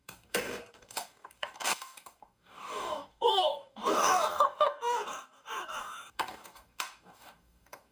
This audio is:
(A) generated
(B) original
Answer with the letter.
A